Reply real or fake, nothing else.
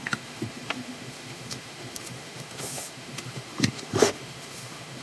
fake